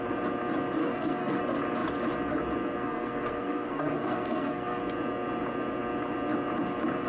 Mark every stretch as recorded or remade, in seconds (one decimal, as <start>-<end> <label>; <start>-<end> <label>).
0.0-0.8 recorded; 0.8-1.4 remade; 1.4-2.8 recorded; 2.8-4.8 remade; 4.8-7.1 recorded